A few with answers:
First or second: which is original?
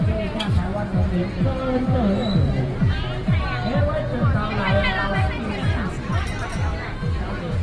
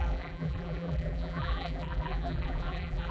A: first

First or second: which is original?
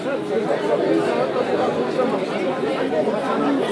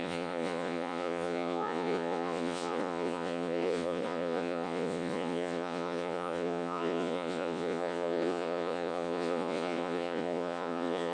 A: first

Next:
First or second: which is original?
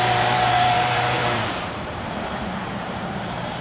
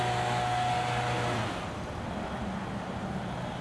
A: second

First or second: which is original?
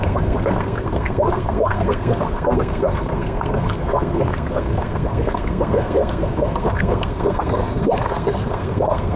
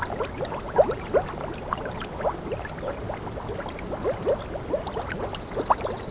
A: second